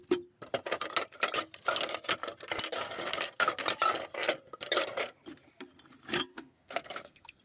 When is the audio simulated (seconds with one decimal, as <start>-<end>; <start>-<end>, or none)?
6.3-7.4